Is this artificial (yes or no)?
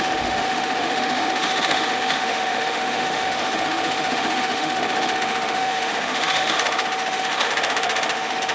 yes